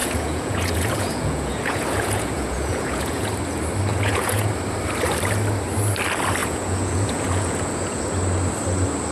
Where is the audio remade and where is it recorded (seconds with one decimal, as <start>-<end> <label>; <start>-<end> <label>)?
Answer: 0.0-3.3 remade; 3.3-3.9 recorded; 3.9-4.5 remade; 4.5-6.4 recorded; 6.4-8.0 remade; 8.0-9.1 recorded